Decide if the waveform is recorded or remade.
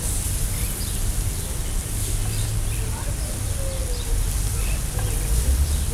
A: recorded